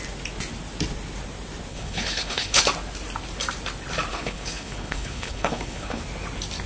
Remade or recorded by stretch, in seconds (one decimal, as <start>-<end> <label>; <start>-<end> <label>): 0.0-1.7 recorded; 1.7-2.6 remade; 2.6-4.1 recorded; 4.1-6.0 remade; 6.0-6.7 recorded